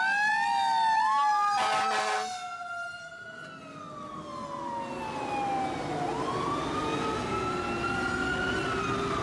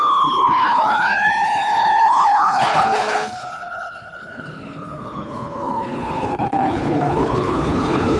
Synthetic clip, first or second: second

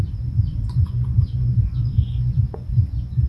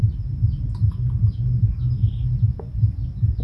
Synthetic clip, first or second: first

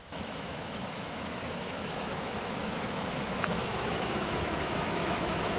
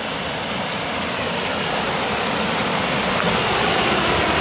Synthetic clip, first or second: first